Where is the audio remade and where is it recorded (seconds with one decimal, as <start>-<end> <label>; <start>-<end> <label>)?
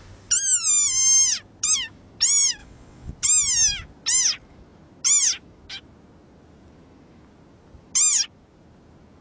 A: 0.0-2.6 recorded; 2.6-3.1 remade; 3.1-9.2 recorded